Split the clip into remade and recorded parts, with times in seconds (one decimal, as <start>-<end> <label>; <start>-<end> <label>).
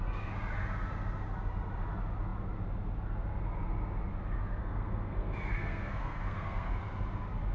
0.0-4.6 recorded; 4.6-6.8 remade; 6.8-7.5 recorded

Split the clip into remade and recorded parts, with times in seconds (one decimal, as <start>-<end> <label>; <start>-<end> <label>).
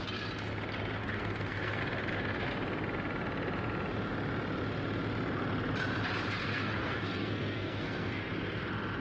0.0-1.0 recorded; 1.0-1.8 remade; 1.8-6.4 recorded; 6.4-8.3 remade; 8.3-9.0 recorded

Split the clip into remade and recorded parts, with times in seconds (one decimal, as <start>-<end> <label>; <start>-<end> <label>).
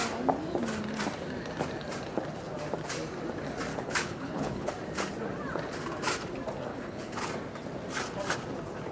0.0-3.7 recorded; 3.7-4.7 remade; 4.7-6.7 recorded; 6.7-7.3 remade; 7.3-8.9 recorded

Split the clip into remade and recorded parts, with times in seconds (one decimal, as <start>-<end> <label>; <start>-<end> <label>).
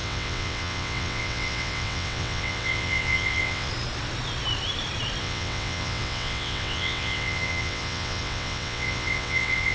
0.0-3.7 remade; 3.7-5.2 recorded; 5.2-9.7 remade